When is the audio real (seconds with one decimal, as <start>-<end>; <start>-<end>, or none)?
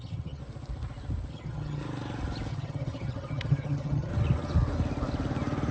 0.4-1.3; 1.8-2.5; 4.1-5.7